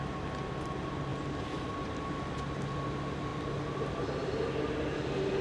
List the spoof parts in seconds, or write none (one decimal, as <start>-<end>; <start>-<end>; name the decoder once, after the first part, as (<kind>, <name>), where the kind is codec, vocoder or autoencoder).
none